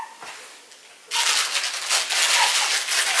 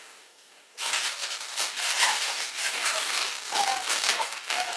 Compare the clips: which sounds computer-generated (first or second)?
second